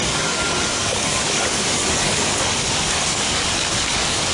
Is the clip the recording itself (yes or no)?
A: no